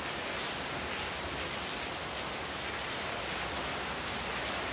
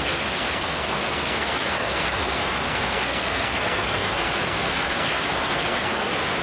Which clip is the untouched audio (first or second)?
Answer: first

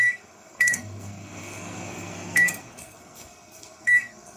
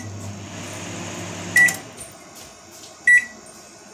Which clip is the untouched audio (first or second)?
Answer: second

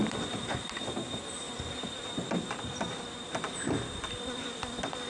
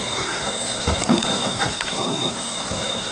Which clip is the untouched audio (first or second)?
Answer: first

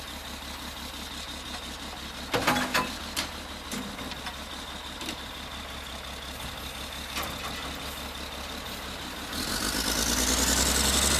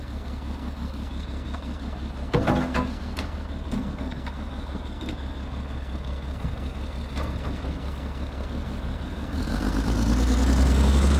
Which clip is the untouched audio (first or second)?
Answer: first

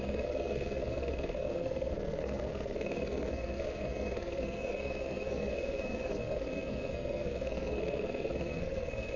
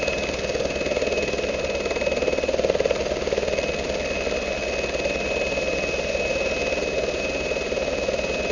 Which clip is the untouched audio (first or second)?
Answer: second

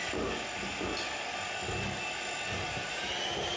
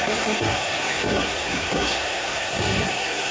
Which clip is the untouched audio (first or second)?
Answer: first